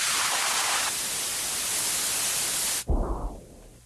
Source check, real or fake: real